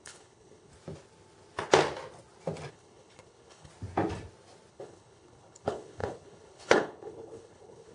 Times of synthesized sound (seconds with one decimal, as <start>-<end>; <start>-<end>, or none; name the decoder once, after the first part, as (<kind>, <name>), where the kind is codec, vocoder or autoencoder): 0.0-0.7 (codec, HILCodec); 2.7-3.7; 4.7-7.9